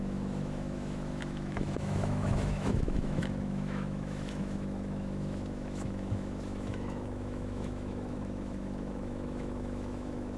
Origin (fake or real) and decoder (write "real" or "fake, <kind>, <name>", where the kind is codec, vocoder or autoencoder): fake, autoencoder, DAC-VAE